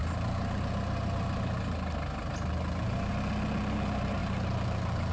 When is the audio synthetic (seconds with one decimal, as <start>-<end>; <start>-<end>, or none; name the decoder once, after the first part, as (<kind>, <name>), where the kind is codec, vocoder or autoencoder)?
none